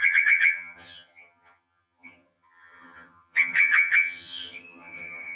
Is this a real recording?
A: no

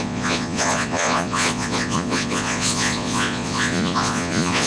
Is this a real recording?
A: no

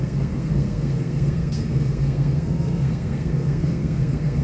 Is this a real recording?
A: no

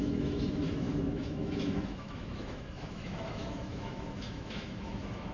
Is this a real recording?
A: no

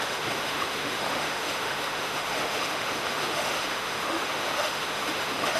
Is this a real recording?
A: no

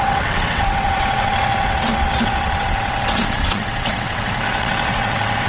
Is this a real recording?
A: no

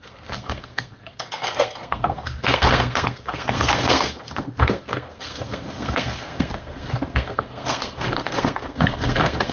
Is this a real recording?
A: no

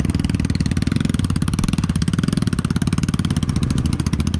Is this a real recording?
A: yes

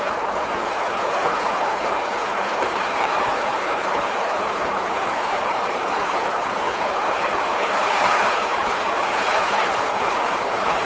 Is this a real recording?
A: no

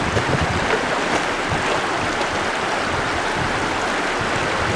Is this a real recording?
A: yes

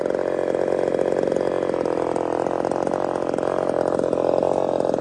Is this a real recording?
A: yes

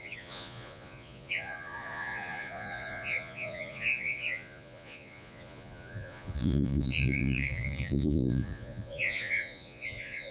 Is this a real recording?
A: no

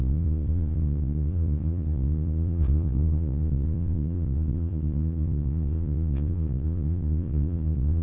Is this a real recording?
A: no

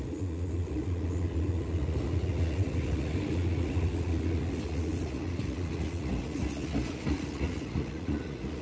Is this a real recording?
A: no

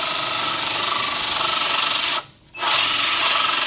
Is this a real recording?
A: yes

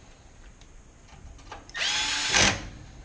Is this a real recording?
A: yes